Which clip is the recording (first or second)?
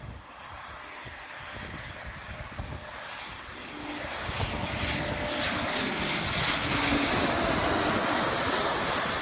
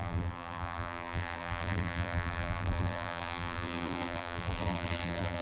first